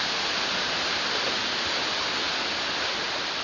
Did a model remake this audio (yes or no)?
no